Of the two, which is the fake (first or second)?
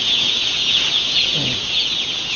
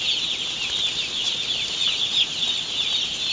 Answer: first